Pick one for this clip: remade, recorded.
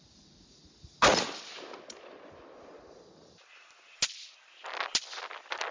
recorded